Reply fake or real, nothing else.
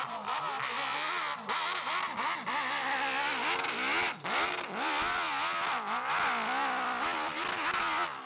real